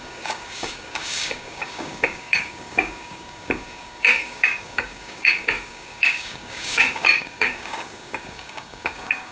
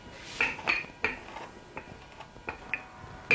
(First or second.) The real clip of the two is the second